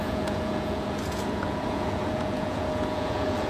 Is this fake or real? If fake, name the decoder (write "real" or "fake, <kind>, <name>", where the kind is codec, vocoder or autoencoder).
fake, vocoder, Vocos